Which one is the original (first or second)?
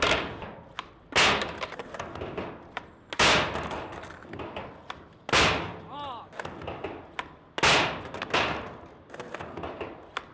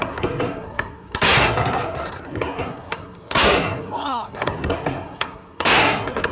first